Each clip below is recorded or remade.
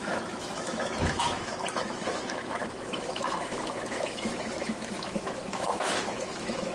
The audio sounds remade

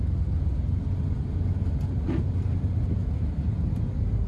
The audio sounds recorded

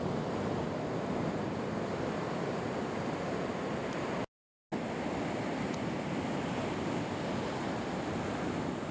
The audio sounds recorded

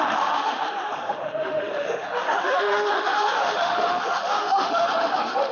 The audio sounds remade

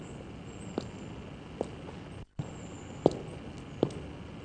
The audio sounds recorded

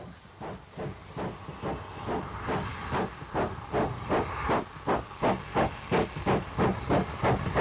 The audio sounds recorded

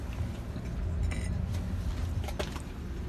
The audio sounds recorded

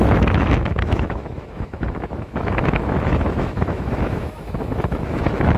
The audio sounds remade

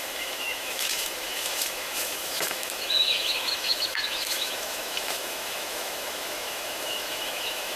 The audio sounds remade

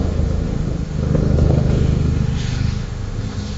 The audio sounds remade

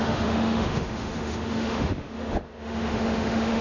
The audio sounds remade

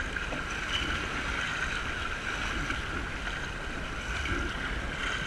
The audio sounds recorded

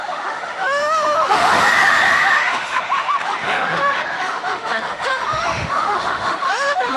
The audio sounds remade